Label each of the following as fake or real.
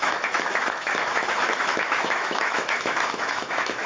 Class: fake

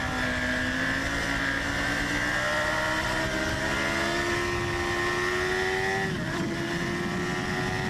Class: real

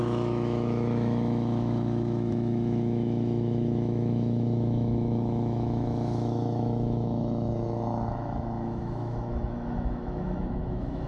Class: fake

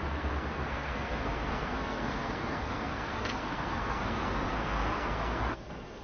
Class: fake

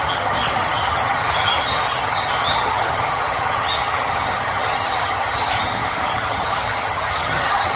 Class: fake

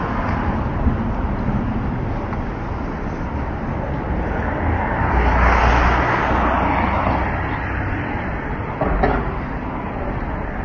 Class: real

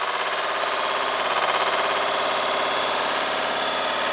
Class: real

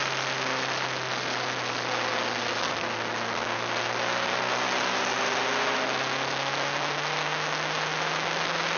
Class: real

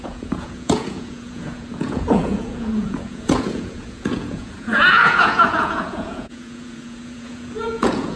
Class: fake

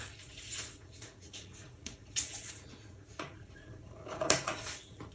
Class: fake